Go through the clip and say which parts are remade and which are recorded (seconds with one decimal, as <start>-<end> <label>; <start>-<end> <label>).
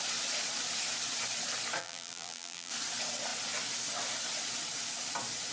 0.0-1.8 recorded; 1.8-2.7 remade; 2.7-5.5 recorded